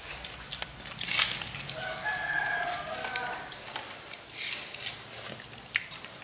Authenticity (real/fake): real